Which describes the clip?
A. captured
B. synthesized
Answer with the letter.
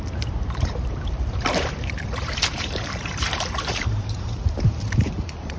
B